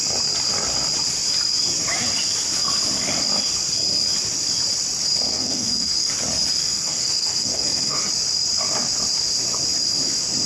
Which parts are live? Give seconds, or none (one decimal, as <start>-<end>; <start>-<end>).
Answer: 0.0-5.3; 6.1-6.6; 8.1-10.5